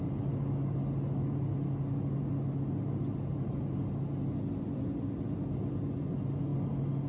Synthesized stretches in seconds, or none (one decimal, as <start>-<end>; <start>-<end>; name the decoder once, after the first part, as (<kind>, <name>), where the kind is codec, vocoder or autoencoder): none